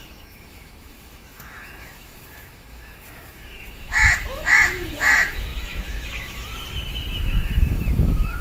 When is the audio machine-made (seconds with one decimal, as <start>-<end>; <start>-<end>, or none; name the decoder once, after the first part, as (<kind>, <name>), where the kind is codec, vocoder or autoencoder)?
0.0-6.5 (autoencoder, DAC-VAE); 7.2-8.4